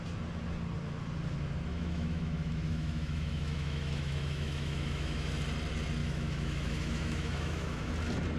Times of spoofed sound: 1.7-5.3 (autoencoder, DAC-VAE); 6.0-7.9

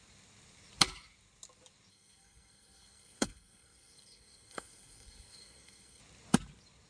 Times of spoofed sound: 1.9-6.0 (codec, SNAC)